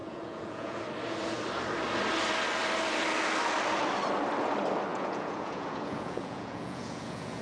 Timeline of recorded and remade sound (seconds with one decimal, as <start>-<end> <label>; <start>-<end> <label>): 0.0-0.8 remade; 0.8-4.9 recorded; 4.9-7.4 remade